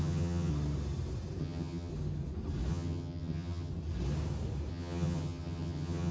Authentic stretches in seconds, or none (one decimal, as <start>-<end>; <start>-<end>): 0.5-1.4; 1.9-2.7; 3.7-4.7